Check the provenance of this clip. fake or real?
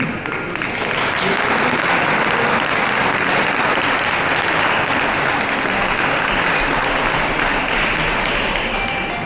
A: real